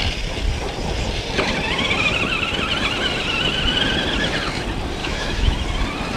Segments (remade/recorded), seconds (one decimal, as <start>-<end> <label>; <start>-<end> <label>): 0.0-5.0 recorded; 5.0-5.6 remade; 5.6-6.2 recorded